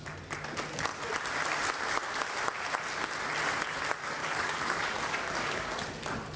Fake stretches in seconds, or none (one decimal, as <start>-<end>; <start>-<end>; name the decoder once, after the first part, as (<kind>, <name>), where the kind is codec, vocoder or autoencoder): 4.2-5.8 (codec, DAC)